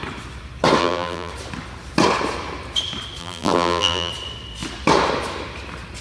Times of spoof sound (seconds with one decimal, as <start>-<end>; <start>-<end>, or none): 0.8-1.3; 3.2-4.1